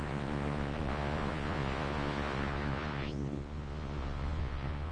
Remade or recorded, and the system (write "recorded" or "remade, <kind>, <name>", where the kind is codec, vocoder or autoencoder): remade, vocoder, Vocos